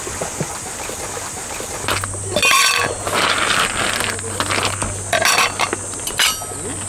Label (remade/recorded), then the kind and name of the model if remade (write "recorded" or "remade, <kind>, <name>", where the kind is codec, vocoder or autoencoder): recorded